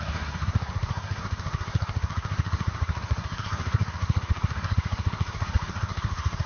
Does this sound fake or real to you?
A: fake